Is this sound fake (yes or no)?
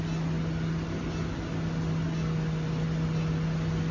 no